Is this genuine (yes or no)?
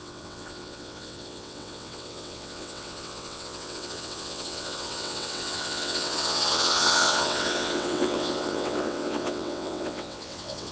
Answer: no